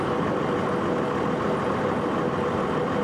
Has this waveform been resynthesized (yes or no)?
no